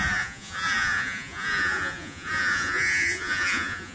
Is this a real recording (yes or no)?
no